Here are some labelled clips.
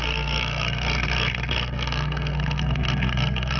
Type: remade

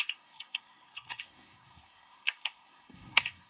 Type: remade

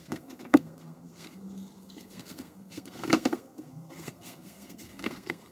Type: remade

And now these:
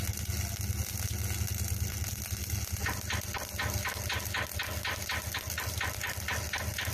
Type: recorded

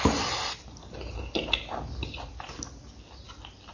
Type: recorded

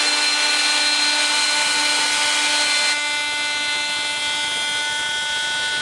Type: recorded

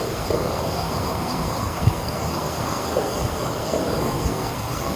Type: remade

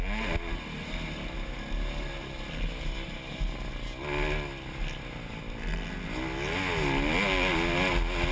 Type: recorded